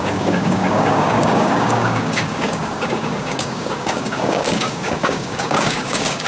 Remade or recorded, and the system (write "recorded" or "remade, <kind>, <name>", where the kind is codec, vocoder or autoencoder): remade, codec, DAC